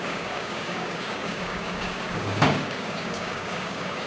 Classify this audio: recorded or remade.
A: remade